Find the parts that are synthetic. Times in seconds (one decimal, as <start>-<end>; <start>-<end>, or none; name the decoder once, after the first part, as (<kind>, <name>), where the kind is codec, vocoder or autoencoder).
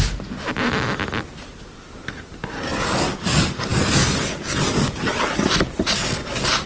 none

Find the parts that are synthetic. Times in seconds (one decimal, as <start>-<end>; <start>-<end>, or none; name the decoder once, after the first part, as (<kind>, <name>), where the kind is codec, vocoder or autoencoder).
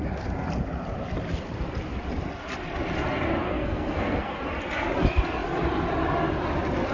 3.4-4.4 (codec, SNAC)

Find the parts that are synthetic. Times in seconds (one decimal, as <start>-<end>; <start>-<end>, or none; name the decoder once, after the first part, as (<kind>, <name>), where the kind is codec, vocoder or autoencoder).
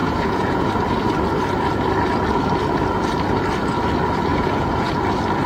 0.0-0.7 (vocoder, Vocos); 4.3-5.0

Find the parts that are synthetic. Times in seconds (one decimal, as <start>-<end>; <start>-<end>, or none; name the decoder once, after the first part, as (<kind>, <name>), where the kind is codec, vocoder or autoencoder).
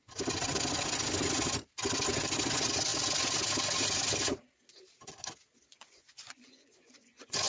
5.7-7.5 (vocoder, Vocos)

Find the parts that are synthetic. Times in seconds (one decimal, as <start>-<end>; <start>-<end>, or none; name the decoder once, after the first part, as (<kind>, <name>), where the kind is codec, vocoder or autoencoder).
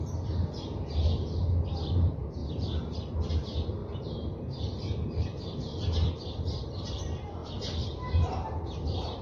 0.0-2.4 (vocoder, BigVGAN v2); 3.3-9.2